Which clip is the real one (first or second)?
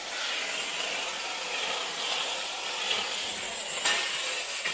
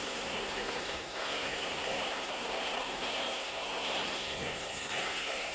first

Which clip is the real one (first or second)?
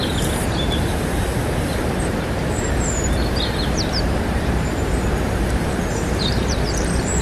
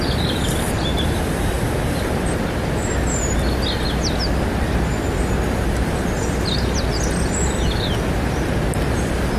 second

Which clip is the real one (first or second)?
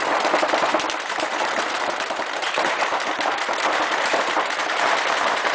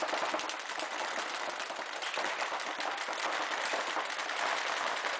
second